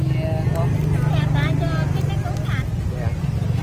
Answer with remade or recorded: recorded